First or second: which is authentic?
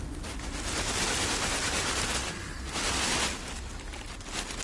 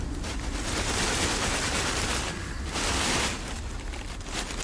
first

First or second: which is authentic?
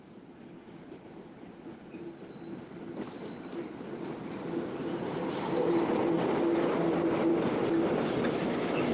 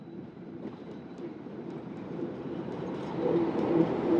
first